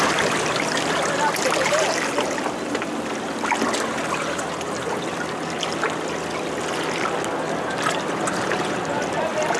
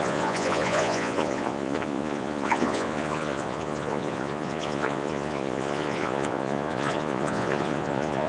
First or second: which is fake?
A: second